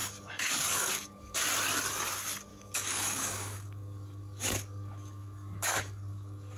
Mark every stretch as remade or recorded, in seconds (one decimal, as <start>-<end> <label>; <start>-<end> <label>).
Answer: 0.0-1.4 remade; 1.4-2.5 recorded; 2.5-6.6 remade